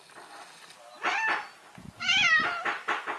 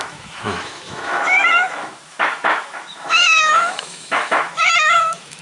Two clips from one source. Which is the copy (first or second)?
second